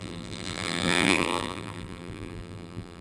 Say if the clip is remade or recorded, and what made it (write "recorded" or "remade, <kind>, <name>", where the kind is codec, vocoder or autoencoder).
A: remade, vocoder, BigVGAN v2